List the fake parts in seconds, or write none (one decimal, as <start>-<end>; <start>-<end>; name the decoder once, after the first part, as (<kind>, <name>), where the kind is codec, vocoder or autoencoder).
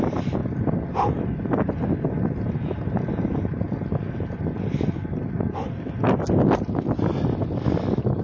none